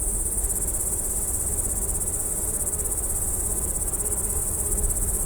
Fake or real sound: real